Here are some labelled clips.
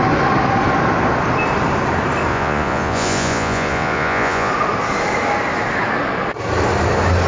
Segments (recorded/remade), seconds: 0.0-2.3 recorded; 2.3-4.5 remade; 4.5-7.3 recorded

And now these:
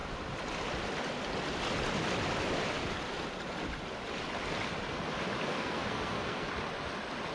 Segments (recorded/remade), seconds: 0.0-5.5 recorded; 5.5-6.5 remade; 6.5-7.3 recorded

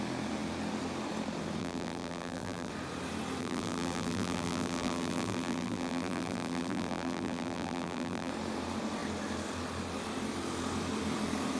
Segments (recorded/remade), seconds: 0.0-1.6 recorded; 1.6-2.7 remade; 2.7-3.4 recorded; 3.4-8.3 remade; 8.3-11.6 recorded

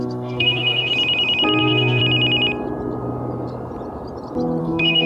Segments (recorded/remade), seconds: 0.0-0.9 remade; 0.9-1.6 recorded; 1.6-2.0 remade; 2.0-4.6 recorded; 4.6-5.1 remade

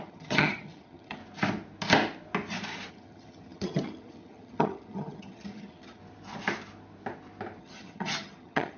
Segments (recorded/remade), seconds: 0.0-1.2 remade; 1.2-2.9 recorded; 2.9-6.0 remade; 6.0-7.6 recorded; 7.6-8.8 remade

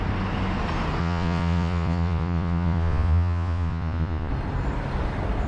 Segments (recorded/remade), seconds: 0.0-1.0 recorded; 1.0-4.3 remade; 4.3-5.5 recorded

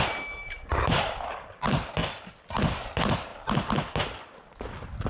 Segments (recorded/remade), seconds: 0.0-5.1 recorded